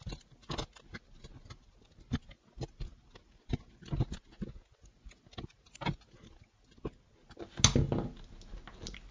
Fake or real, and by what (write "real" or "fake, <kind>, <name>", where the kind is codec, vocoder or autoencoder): real